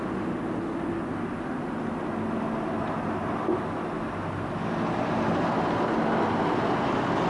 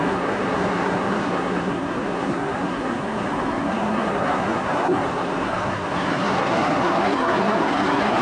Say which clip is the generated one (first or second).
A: second